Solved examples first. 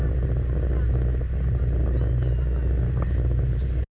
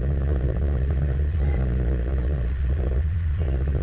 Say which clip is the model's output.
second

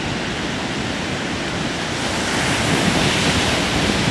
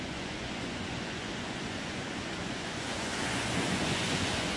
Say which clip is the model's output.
second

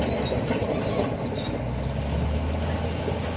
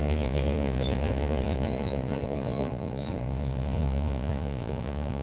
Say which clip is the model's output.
second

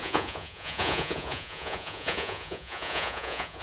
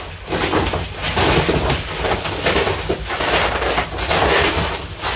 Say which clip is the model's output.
first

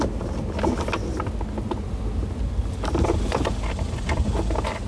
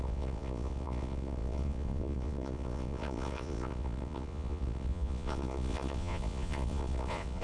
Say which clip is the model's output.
second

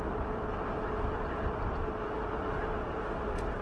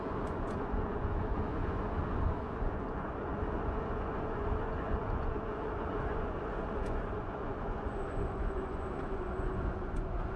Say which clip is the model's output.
second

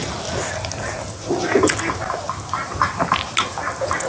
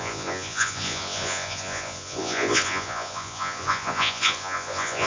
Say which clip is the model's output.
second